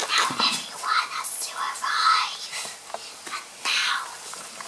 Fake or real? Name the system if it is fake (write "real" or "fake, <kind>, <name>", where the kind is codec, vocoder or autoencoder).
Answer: real